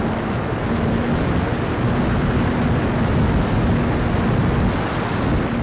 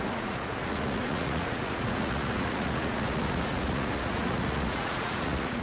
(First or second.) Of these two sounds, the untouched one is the first